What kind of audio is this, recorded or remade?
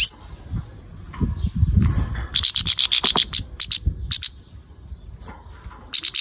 recorded